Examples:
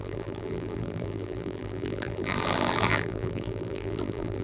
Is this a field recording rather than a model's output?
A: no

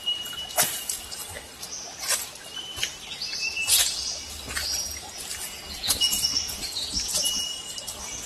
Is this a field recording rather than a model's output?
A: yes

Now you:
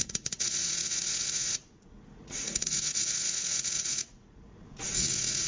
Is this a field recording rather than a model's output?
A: no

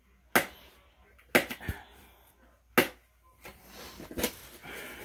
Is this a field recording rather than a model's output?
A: yes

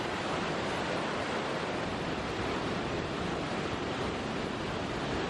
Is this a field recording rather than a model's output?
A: no